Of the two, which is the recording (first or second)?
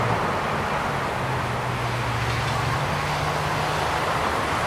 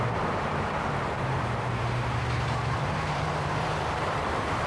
first